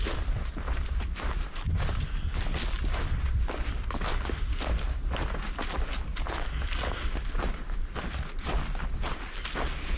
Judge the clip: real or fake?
real